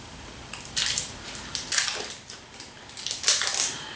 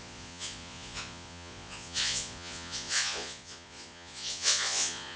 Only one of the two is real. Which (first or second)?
first